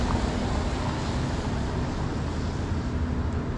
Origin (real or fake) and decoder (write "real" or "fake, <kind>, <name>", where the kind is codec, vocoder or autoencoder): real